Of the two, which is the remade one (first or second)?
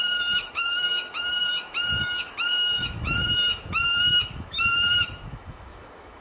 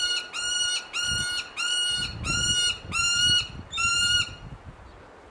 first